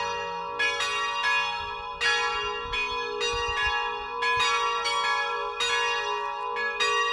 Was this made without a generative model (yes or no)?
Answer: yes